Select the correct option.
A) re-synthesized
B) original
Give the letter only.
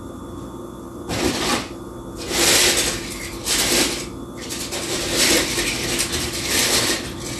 B